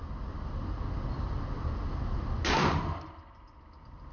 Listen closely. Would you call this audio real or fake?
real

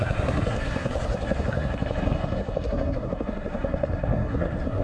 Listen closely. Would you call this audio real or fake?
fake